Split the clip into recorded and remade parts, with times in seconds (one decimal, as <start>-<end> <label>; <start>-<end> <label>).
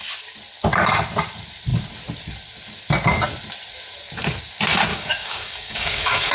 0.0-4.9 recorded; 4.9-6.3 remade